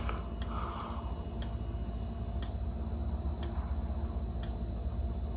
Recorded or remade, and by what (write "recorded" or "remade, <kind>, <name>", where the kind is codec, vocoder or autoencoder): recorded